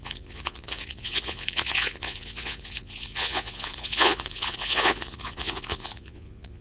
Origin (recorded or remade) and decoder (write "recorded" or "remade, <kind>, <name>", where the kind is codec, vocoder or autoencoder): remade, vocoder, Vocos